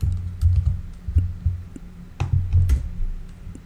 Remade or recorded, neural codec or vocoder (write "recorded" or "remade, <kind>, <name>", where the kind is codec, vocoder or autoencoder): recorded